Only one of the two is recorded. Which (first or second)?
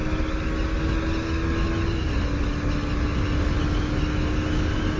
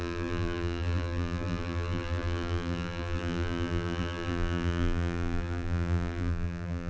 first